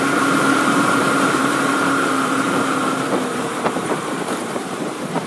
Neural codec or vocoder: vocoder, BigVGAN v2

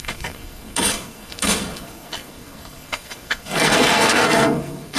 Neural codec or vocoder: codec, SNAC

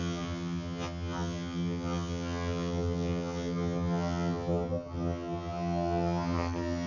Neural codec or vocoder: vocoder, HiFi-GAN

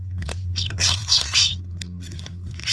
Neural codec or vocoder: codec, SNAC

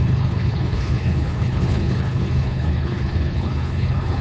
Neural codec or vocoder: codec, HILCodec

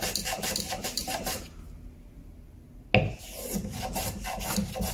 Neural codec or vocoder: none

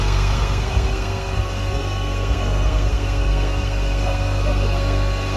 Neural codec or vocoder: codec, SNAC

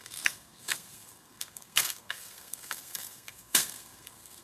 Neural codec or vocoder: codec, SNAC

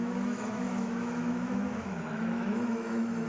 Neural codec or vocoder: autoencoder, DAC-VAE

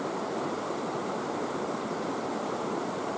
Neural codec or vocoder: vocoder, BigVGAN v2